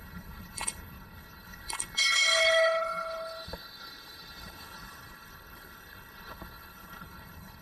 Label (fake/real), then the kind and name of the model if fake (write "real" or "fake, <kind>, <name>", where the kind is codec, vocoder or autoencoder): fake, codec, HILCodec